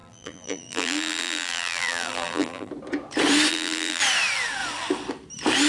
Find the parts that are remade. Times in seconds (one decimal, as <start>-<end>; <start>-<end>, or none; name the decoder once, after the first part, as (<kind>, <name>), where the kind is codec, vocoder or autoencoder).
0.0-2.7 (vocoder, BigVGAN v2); 3.5-4.0